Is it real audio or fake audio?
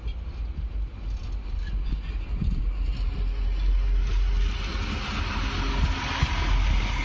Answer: real